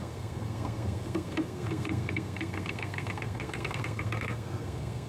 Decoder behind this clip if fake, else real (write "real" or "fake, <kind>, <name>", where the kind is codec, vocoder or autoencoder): fake, codec, SNAC